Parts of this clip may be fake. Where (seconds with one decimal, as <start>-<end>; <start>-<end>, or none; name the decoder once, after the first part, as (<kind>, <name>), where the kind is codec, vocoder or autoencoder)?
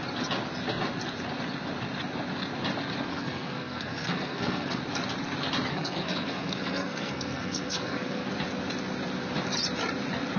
3.1-4.8 (codec, SNAC); 5.7-8.3